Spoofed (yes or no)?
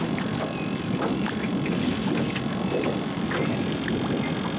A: no